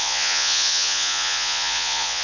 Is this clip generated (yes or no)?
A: yes